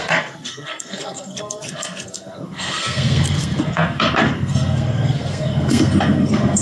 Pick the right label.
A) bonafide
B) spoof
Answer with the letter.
B